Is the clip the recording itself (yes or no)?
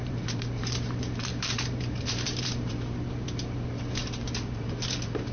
no